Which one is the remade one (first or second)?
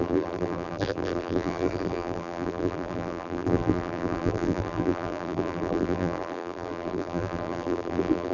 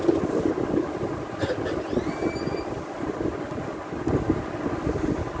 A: first